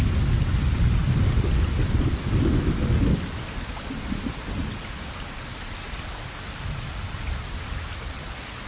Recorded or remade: recorded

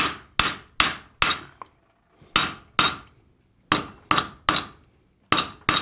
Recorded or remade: recorded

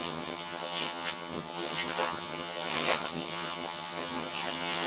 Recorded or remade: remade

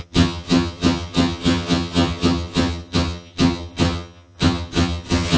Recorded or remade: remade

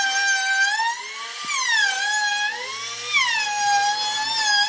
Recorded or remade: recorded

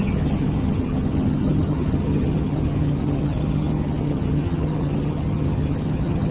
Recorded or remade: remade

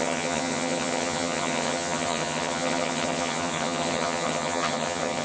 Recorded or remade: remade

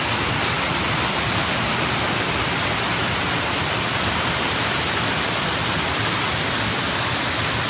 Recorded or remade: recorded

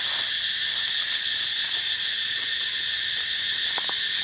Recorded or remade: recorded